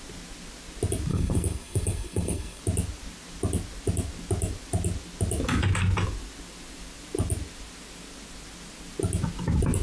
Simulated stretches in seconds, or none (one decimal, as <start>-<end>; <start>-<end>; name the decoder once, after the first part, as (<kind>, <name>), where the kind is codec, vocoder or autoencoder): 1.1-2.6 (codec, SNAC)